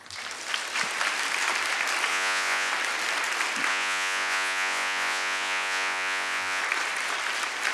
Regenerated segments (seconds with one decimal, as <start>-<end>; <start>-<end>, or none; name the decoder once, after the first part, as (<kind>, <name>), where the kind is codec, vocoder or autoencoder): 2.1-2.7 (vocoder, Vocos); 3.7-6.6

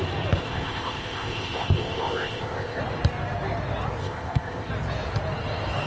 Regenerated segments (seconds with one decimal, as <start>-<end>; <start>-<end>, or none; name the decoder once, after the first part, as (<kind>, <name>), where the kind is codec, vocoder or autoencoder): 0.4-2.8 (codec, ZipCodec); 4.0-4.7

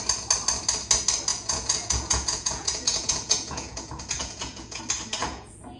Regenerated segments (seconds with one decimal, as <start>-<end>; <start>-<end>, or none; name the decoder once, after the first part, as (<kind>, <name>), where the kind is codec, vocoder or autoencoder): 1.3-4.8 (vocoder, Vocos); 5.2-5.8

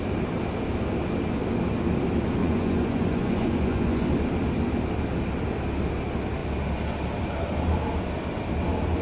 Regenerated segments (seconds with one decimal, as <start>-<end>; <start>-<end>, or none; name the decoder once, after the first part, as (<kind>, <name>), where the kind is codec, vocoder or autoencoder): 2.4-4.1 (vocoder, Vocos)

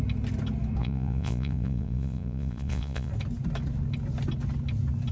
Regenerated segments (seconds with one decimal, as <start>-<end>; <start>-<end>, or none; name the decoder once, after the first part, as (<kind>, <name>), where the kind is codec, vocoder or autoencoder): 0.8-3.1 (vocoder, Vocos)

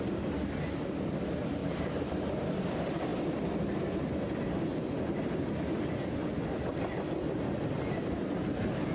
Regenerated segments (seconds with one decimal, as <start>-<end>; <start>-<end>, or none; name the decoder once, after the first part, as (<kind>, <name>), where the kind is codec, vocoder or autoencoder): 1.6-2.5 (vocoder, BigVGAN v2); 3.1-4.1

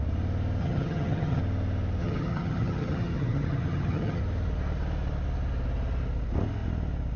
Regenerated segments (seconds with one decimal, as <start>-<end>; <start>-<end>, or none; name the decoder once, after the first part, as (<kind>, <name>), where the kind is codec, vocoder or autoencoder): 0.6-1.4 (vocoder, HiFi-GAN); 2.0-4.2